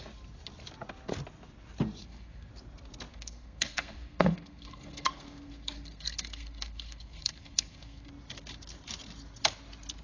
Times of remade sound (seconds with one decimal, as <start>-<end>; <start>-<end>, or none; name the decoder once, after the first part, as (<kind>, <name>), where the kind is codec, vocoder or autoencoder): 2.0-2.5 (codec, SNAC); 3.1-8.1